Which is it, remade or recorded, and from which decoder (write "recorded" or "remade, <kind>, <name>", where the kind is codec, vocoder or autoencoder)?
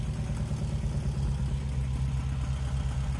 recorded